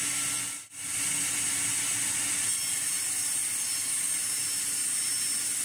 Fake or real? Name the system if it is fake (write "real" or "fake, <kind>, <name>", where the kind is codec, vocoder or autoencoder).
real